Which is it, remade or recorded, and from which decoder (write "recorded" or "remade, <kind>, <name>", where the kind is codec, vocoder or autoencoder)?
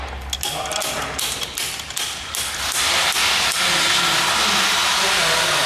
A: recorded